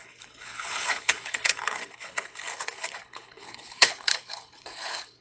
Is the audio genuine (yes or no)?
no